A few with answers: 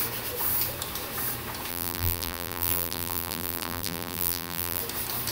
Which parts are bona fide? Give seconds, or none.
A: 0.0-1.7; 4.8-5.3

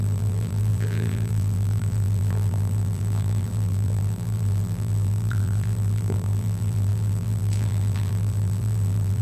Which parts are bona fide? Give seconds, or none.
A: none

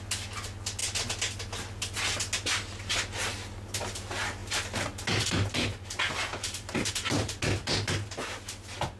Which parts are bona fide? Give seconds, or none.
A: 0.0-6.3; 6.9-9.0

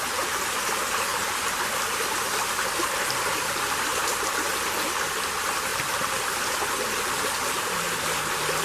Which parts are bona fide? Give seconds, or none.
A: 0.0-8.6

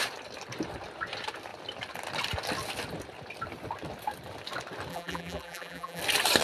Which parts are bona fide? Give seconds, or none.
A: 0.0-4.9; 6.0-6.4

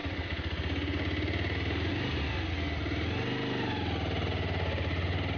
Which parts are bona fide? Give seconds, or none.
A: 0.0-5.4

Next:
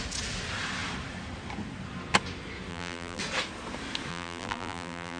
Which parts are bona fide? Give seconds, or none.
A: 0.0-2.7; 3.2-4.1